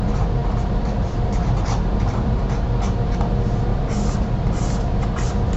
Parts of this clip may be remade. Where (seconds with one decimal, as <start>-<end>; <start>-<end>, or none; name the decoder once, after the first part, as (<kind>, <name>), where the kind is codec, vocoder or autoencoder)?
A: 0.4-2.4 (vocoder, BigVGAN v2); 3.7-5.6